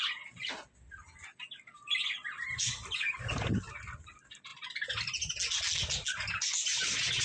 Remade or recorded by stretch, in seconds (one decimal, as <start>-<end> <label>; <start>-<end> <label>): 0.0-7.2 recorded